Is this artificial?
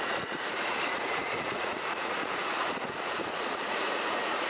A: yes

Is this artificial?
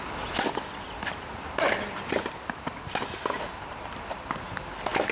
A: no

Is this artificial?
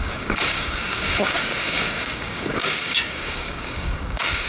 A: yes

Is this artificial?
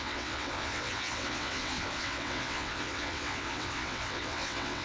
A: yes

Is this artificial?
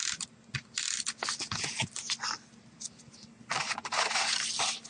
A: no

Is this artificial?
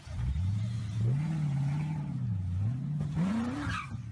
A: yes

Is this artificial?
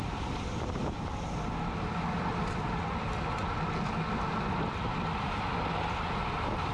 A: no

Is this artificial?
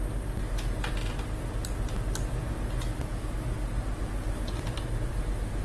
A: no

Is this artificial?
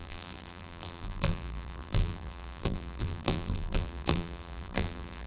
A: yes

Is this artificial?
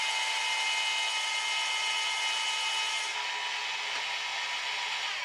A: no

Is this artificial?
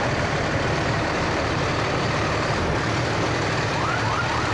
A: yes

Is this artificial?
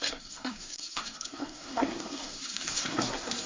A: yes